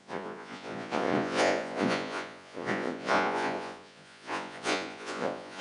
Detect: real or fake fake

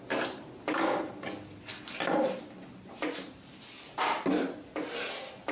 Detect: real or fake real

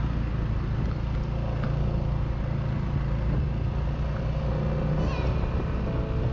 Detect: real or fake real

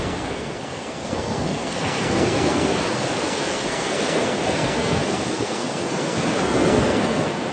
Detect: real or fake fake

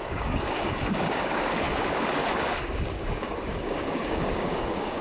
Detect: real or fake fake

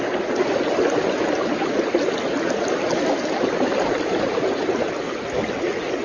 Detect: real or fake real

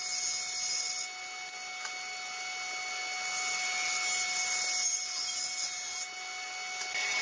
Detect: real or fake real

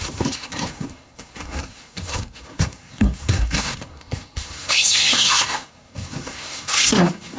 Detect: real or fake fake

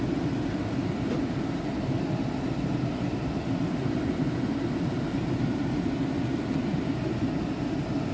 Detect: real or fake real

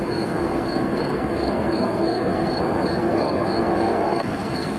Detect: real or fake fake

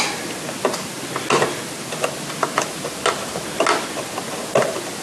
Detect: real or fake real